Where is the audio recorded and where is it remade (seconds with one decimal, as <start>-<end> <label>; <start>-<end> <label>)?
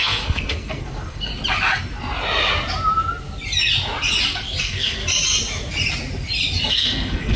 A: 0.0-1.3 remade; 1.3-4.6 recorded; 4.6-5.0 remade; 5.0-6.7 recorded; 6.7-7.4 remade